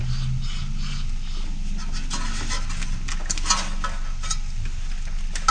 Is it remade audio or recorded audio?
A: recorded